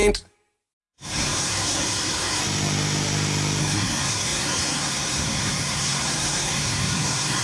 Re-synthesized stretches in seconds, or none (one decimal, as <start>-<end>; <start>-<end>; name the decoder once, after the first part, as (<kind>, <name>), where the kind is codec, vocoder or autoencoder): 0.8-2.4 (codec, SNAC); 3.6-7.4